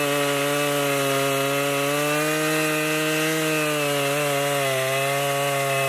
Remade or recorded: recorded